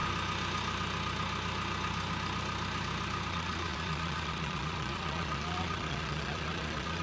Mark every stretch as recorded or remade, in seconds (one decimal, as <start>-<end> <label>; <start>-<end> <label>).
0.0-3.3 recorded; 3.3-7.0 remade